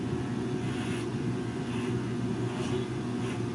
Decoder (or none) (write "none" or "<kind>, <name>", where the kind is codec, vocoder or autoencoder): vocoder, Vocos